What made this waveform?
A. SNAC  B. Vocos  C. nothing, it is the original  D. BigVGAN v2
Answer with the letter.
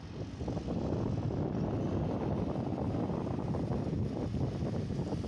C